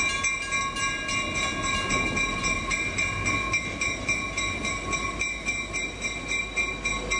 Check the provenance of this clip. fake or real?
real